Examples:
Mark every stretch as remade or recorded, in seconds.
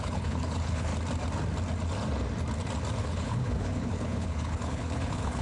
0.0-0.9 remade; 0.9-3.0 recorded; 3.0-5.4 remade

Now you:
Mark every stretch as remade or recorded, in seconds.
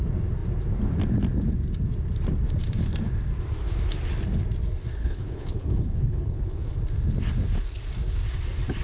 0.0-5.0 recorded; 5.0-6.7 remade; 6.7-8.8 recorded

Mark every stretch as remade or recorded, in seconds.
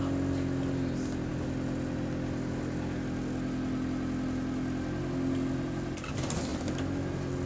0.0-7.5 recorded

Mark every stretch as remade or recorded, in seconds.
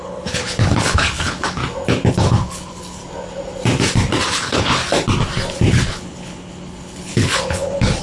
0.0-1.6 remade; 1.6-2.1 recorded; 2.1-3.0 remade; 3.0-4.3 recorded; 4.3-4.8 remade; 4.8-5.7 recorded; 5.7-8.0 remade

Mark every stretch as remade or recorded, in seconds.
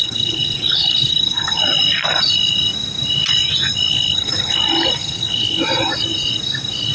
0.0-1.6 remade; 1.6-3.9 recorded; 3.9-4.6 remade; 4.6-5.0 recorded; 5.0-5.6 remade; 5.6-6.9 recorded